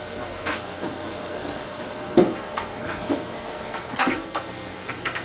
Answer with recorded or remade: remade